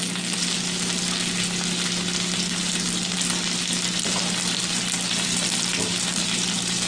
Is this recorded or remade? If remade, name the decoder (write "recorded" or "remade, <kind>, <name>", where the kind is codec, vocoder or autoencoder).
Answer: recorded